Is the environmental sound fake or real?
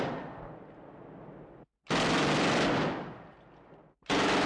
real